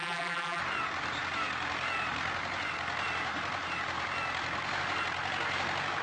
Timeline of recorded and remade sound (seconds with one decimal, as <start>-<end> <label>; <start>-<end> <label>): 0.0-0.6 remade; 0.6-6.0 recorded